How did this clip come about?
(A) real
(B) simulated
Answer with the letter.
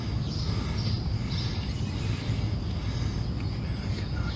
A